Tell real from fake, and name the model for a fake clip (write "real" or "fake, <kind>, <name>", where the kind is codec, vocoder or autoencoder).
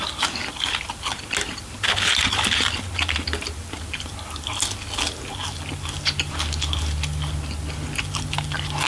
real